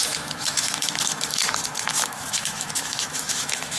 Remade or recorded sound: remade